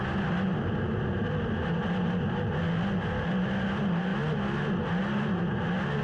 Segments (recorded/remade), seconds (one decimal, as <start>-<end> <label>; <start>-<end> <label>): 0.0-6.0 recorded